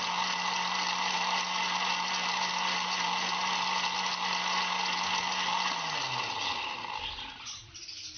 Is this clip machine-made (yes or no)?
no